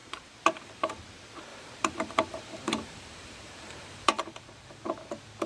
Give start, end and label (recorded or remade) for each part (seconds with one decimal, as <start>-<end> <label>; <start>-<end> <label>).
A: 0.0-1.0 remade; 1.0-1.5 recorded; 1.5-4.8 remade; 4.8-5.5 recorded